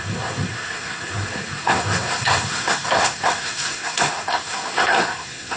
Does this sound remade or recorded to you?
remade